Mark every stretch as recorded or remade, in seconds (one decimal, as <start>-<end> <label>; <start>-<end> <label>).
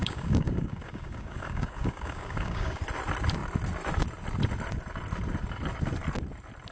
0.0-2.8 remade; 2.8-6.7 recorded